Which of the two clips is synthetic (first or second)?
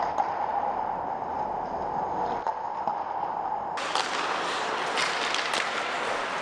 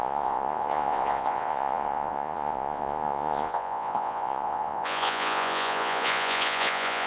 second